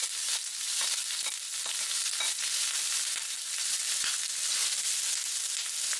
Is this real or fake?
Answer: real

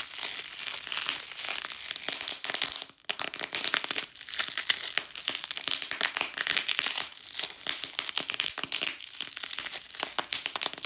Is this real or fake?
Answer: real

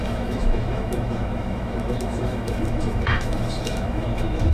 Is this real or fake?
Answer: fake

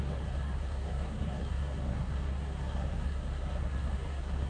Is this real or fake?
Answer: fake